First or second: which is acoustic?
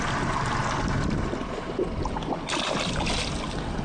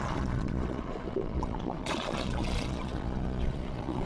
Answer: first